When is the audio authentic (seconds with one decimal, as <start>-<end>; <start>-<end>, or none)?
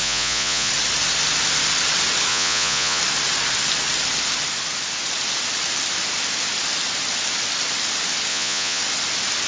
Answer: 0.7-2.3; 3.0-8.3; 8.8-9.5